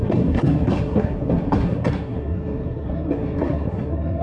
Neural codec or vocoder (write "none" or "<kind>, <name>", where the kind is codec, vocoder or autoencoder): codec, SNAC